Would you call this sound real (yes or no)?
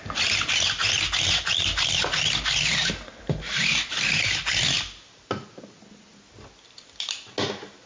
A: yes